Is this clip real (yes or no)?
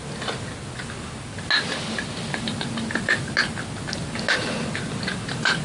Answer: yes